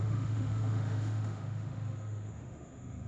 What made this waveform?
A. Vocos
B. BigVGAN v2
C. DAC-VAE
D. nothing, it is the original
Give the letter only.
C